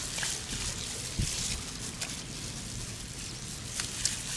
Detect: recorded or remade recorded